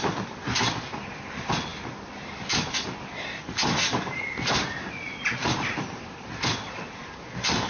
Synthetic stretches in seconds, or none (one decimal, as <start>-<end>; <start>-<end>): none